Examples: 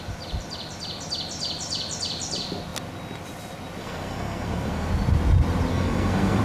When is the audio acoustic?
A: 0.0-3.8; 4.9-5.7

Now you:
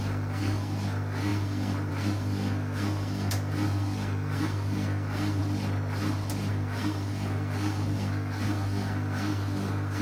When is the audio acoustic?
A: 5.4-6.5